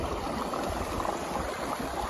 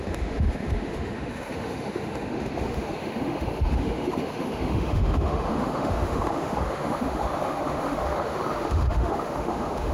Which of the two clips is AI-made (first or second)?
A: second